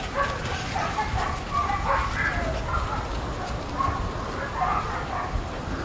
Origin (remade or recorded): recorded